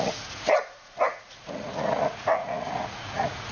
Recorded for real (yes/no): no